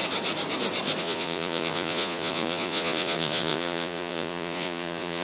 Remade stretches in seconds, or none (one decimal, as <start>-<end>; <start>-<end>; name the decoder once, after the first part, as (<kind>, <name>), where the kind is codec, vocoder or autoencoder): 1.0-5.2 (vocoder, Vocos)